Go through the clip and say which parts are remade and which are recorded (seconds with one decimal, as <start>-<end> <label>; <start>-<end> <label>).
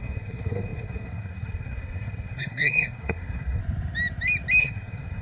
0.0-3.6 remade; 3.6-4.6 recorded; 4.6-5.2 remade